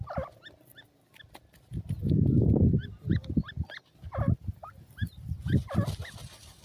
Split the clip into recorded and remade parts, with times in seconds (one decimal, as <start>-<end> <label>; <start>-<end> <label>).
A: 0.0-6.6 recorded